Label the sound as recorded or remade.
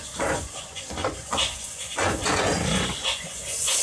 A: remade